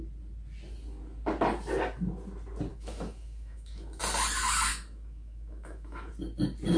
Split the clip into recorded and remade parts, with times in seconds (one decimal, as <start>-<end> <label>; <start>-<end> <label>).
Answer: 0.0-2.7 recorded; 2.7-4.0 remade; 4.0-4.7 recorded; 4.7-6.1 remade; 6.1-6.8 recorded